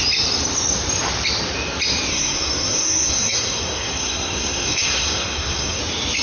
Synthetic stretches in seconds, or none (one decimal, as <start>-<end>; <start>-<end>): 2.1-5.8